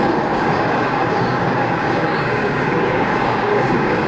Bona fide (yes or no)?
no